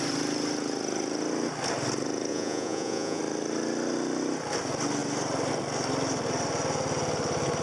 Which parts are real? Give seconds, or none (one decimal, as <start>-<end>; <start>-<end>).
0.0-2.3; 3.2-7.6